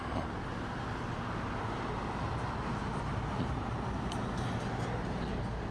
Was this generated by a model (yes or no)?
no